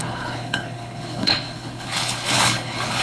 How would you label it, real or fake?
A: fake